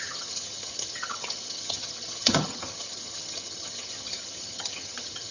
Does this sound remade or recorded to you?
remade